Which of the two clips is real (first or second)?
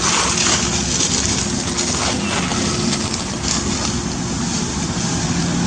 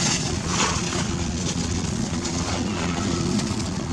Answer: first